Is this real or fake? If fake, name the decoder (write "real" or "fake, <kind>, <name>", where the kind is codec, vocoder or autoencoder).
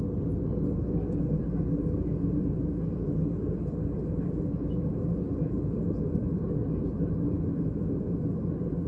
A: real